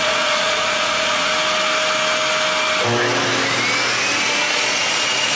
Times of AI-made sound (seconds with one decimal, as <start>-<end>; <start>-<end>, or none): 0.0-1.3; 4.5-5.4